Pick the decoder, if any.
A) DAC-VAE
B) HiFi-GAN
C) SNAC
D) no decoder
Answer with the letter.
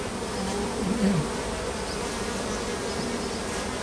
D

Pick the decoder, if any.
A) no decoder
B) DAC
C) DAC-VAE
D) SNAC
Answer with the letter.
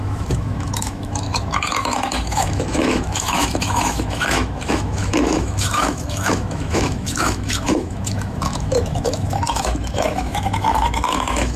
C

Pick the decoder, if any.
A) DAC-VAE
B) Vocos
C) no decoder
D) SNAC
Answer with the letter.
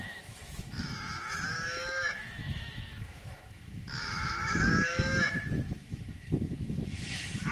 A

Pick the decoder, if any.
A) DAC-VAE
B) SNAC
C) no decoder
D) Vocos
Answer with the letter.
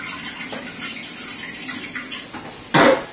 C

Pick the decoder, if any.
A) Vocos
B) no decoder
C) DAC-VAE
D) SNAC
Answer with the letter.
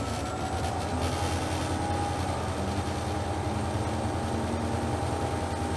B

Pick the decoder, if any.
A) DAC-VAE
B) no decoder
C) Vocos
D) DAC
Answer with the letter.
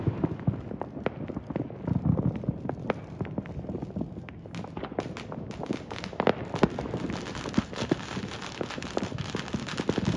B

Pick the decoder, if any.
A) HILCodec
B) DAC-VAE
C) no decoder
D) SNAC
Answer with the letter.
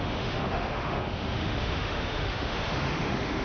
B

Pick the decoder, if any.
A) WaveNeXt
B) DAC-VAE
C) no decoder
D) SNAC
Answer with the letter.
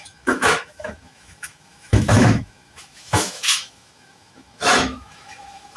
B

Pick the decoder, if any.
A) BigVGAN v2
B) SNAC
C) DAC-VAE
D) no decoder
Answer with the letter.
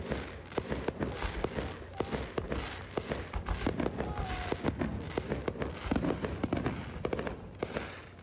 D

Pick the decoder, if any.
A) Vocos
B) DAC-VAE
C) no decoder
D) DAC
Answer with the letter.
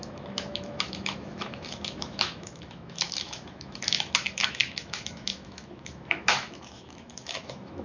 B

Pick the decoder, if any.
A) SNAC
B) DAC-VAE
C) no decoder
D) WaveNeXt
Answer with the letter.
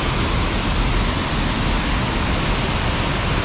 C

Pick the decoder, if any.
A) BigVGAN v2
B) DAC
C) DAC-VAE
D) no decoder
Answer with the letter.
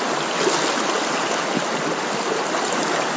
D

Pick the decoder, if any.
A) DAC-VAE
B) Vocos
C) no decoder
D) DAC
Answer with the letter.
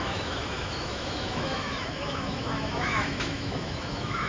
A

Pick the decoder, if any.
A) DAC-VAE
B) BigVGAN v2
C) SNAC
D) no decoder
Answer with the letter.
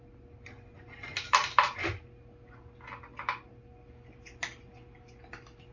D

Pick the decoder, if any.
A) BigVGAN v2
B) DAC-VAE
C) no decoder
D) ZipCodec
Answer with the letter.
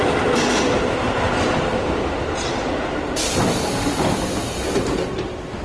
C